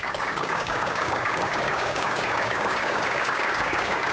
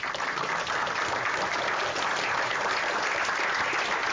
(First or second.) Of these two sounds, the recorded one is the second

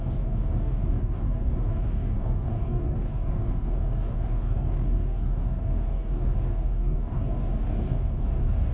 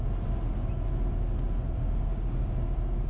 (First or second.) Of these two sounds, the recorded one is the second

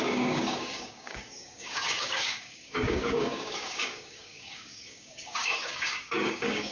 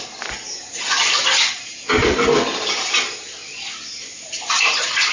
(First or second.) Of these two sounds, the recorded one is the second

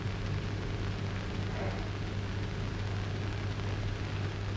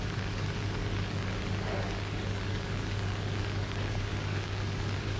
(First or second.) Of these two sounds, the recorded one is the first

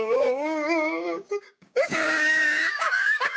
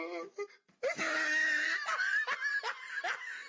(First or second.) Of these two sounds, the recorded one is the second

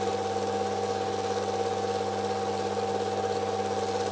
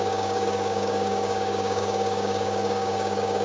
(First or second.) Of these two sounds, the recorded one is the first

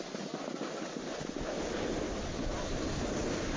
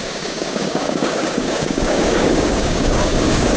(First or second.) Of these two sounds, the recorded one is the first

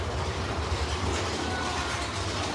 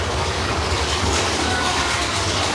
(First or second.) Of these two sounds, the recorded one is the first